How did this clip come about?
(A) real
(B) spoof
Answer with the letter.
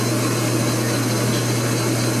A